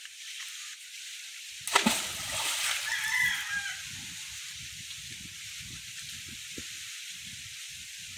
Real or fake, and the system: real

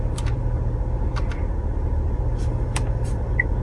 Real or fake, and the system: fake, vocoder, BigVGAN v2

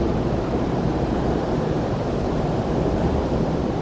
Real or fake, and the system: fake, vocoder, BigVGAN v2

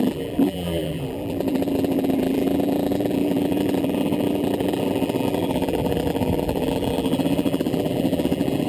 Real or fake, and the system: fake, vocoder, BigVGAN v2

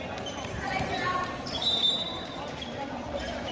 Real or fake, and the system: fake, vocoder, BigVGAN v2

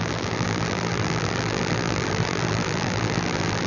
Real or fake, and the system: fake, vocoder, BigVGAN v2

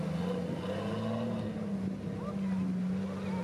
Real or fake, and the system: real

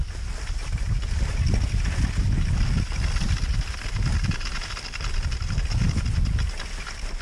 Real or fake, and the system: real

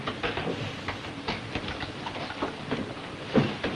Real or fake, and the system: real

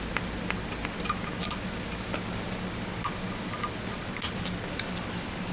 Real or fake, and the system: real